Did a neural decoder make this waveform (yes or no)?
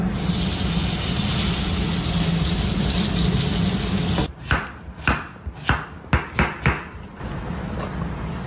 no